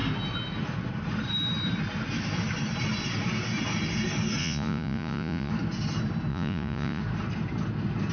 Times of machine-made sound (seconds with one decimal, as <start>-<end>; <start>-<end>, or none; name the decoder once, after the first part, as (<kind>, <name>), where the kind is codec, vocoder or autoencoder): 4.4-5.5 (vocoder, Vocos); 6.3-7.0